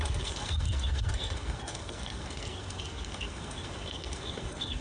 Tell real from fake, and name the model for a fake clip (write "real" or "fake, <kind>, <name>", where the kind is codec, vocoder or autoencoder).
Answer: fake, codec, SNAC